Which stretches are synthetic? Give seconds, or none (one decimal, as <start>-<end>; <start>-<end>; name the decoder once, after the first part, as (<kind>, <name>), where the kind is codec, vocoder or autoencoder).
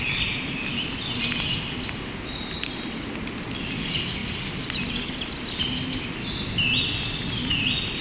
none